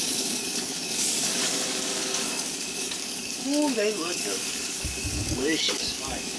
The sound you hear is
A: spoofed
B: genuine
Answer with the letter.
A